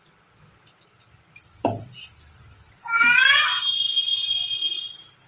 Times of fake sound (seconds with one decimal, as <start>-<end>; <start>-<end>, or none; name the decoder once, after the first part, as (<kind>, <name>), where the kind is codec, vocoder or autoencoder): 2.8-3.6 (codec, DAC)